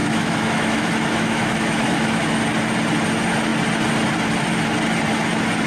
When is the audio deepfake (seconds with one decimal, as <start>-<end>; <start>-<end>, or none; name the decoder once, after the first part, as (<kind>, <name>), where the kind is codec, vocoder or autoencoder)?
0.0-2.4 (autoencoder, DAC-VAE)

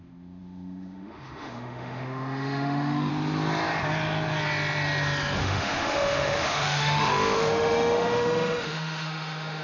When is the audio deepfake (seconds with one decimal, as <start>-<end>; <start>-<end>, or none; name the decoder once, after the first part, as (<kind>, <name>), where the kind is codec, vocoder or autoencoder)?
0.0-3.1 (autoencoder, DAC-VAE); 5.4-9.6